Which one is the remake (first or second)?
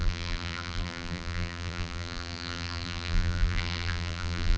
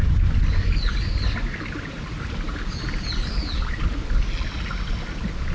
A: first